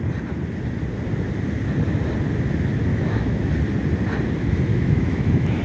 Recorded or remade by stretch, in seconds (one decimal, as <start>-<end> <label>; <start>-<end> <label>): 0.0-2.9 recorded; 2.9-3.5 remade; 3.5-4.7 recorded; 4.7-5.6 remade